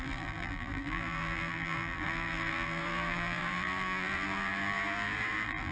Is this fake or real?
fake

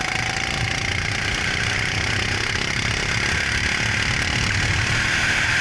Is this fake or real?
real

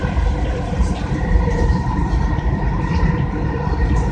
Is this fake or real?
fake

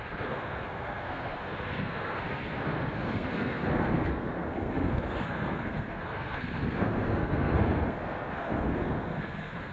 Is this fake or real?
fake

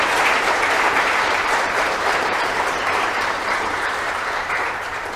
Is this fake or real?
fake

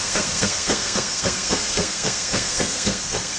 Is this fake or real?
fake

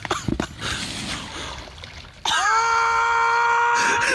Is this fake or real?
real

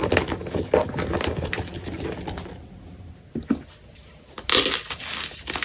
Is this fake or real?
real